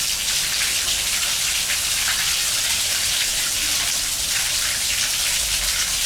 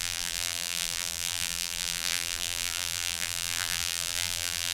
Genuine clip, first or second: first